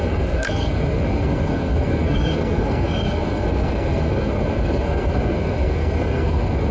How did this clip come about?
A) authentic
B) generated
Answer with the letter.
B